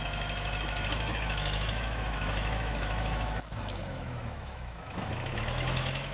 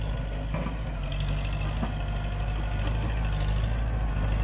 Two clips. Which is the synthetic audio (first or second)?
first